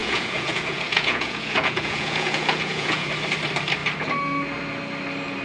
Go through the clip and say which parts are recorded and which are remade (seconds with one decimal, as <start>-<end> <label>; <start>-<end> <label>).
0.0-3.1 remade; 3.1-5.4 recorded